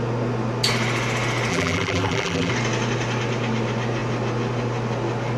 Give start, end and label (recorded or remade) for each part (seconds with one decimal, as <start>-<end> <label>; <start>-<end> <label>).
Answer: 0.0-1.5 recorded; 1.5-2.5 remade; 2.5-5.4 recorded